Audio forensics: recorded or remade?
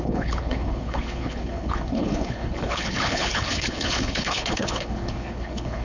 remade